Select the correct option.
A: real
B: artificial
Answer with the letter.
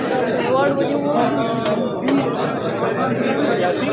A